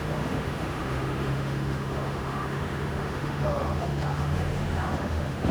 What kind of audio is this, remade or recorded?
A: remade